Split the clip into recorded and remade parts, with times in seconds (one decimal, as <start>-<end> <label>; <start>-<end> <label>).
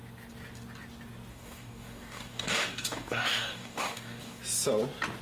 0.0-1.3 recorded; 1.3-4.4 remade; 4.4-5.2 recorded